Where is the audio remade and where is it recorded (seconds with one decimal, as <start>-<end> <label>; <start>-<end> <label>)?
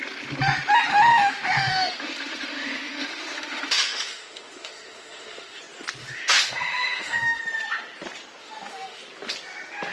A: 0.0-0.9 recorded; 0.9-5.6 remade; 5.6-6.0 recorded; 6.0-7.4 remade; 7.4-8.4 recorded; 8.4-9.0 remade; 9.0-9.9 recorded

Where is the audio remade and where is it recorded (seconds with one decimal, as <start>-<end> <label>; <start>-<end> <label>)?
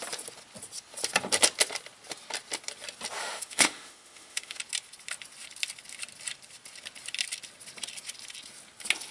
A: 0.0-3.2 recorded; 3.2-4.6 remade; 4.6-9.1 recorded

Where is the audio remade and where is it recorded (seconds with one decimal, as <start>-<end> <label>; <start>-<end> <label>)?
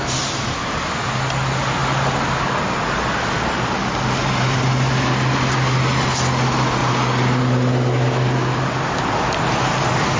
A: 0.0-10.2 recorded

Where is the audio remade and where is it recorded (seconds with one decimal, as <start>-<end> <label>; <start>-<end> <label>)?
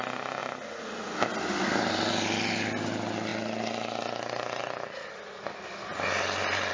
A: 0.0-6.7 recorded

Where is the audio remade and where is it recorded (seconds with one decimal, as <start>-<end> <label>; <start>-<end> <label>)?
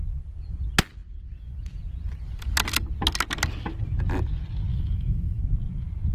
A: 0.0-4.7 recorded; 4.7-5.4 remade; 5.4-6.1 recorded